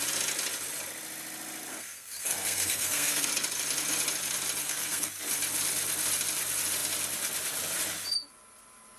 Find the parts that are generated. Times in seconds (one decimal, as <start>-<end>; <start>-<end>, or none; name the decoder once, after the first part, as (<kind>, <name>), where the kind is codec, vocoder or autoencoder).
1.7-3.3 (codec, SNAC); 4.6-5.1